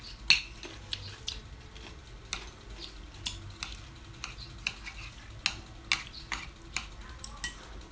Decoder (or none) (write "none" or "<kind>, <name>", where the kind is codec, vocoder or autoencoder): none